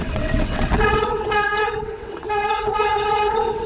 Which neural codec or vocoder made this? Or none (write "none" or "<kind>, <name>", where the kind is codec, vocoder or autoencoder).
vocoder, WaveNeXt